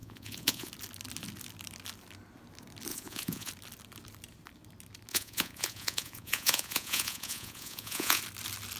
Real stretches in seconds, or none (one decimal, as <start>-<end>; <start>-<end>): 0.7-2.9; 3.5-5.1; 8.2-8.8